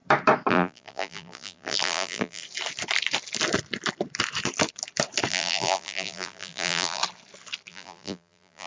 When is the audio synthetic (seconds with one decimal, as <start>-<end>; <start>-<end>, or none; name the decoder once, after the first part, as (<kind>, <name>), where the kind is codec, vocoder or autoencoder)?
0.5-2.4 (vocoder, BigVGAN v2); 5.3-7.0; 7.7-8.7